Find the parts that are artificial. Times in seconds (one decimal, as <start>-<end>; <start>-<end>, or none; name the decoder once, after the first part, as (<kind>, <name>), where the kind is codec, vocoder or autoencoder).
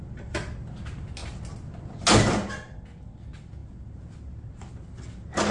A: none